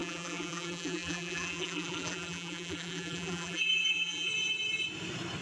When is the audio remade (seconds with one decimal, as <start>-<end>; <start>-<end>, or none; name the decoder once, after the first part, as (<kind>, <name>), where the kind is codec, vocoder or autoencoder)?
0.0-4.3 (vocoder, BigVGAN v2)